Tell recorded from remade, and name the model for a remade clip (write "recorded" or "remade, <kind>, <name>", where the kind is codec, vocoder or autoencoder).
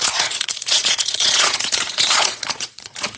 remade, vocoder, Vocos